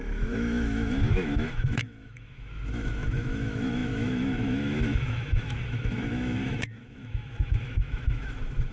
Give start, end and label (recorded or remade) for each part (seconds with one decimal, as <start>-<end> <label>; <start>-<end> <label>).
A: 0.0-8.7 remade